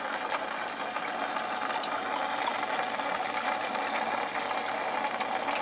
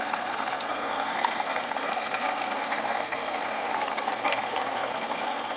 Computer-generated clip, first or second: second